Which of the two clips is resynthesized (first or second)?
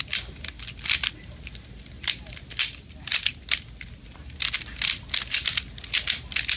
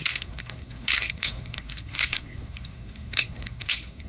second